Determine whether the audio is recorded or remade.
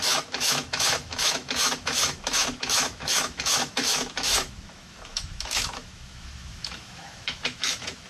remade